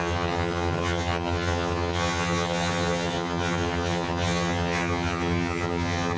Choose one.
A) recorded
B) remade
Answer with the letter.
B